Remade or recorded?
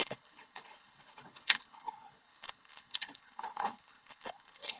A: remade